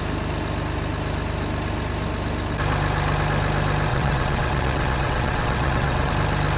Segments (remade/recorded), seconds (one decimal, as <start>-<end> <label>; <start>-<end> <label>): 0.0-3.9 recorded; 3.9-6.1 remade; 6.1-6.6 recorded

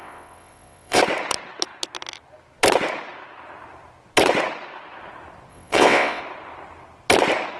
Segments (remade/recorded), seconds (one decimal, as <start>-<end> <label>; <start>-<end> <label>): 0.0-1.0 remade; 1.0-5.5 recorded; 5.5-6.2 remade; 6.2-7.6 recorded

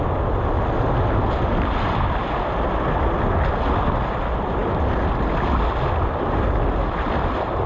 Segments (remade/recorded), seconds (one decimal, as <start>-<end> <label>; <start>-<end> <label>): 0.0-7.7 recorded

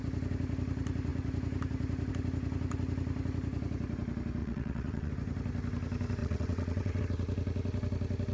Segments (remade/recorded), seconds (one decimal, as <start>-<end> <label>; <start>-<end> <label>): 0.0-4.4 recorded; 4.4-5.1 remade; 5.1-6.2 recorded; 6.2-7.0 remade; 7.0-8.3 recorded